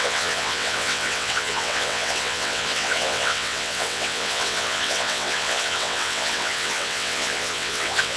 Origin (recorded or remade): remade